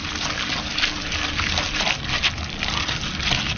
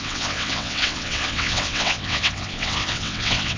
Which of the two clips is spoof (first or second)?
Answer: second